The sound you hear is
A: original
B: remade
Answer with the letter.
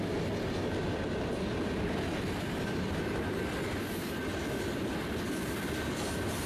A